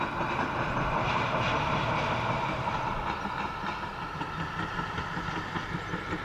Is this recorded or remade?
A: recorded